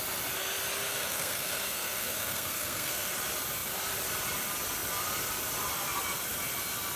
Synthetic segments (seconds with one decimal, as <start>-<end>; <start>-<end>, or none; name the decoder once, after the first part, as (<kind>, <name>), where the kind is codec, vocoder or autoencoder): 0.9-3.1 (codec, SNAC)